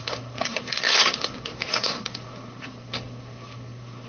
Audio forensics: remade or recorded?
remade